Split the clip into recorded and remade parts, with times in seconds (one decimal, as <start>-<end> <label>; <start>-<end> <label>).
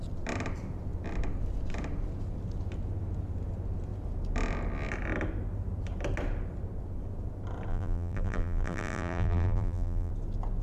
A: 0.0-7.7 recorded; 7.7-10.1 remade; 10.1-10.6 recorded